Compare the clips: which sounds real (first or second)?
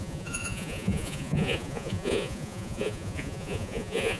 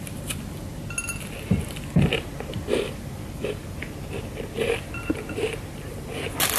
second